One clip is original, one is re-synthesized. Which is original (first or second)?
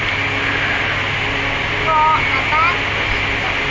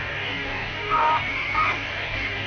first